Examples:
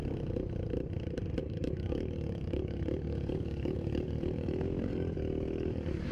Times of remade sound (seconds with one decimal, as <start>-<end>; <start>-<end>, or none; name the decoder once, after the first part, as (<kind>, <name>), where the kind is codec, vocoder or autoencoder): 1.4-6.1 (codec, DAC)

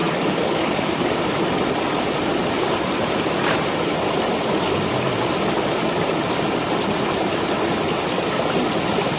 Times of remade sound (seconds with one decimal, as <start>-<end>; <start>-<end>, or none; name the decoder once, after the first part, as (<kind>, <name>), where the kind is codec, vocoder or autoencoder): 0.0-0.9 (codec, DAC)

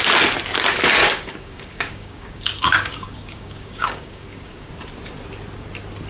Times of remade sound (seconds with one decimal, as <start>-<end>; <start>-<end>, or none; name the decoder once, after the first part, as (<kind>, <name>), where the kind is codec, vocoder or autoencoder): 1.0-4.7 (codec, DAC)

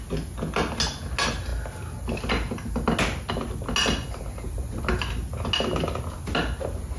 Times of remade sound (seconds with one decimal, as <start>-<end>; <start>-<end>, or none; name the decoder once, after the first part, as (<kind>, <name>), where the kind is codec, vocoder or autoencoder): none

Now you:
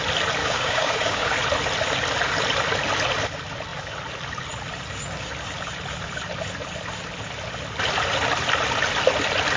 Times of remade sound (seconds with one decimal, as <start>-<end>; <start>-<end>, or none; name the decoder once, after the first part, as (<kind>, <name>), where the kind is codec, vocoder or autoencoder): 0.4-1.3 (codec, DAC)